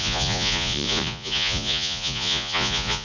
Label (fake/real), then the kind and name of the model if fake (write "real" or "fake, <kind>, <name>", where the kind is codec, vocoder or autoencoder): fake, vocoder, Vocos